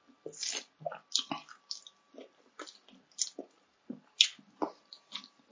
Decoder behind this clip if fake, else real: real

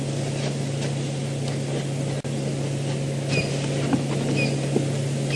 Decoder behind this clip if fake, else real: real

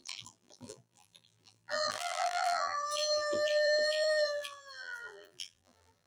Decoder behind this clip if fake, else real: fake, vocoder, BigVGAN v2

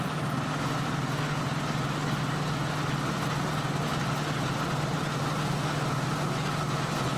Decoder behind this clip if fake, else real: real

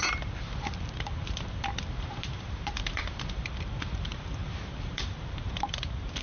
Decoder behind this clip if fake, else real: fake, vocoder, BigVGAN v2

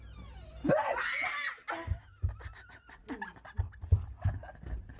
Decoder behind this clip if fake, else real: real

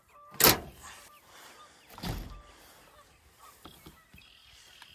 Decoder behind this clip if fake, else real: real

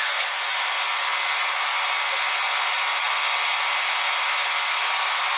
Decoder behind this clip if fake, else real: real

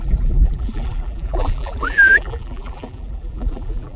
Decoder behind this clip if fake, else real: fake, vocoder, BigVGAN v2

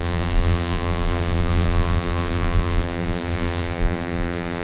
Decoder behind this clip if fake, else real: fake, vocoder, BigVGAN v2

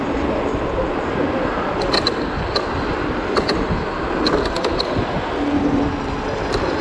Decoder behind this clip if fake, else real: real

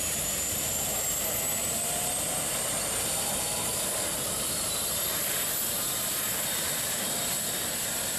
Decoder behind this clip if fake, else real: real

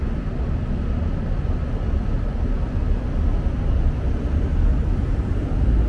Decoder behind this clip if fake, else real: real